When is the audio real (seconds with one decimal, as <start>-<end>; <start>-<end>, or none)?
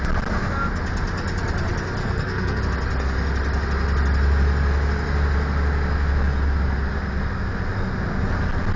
0.0-2.0; 2.6-8.8